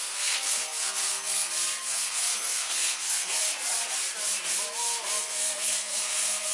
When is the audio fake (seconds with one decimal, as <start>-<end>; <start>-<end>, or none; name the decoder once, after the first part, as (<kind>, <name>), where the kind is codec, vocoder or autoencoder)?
0.0-3.4 (codec, SNAC); 5.2-6.5